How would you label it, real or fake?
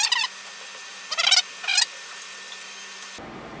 real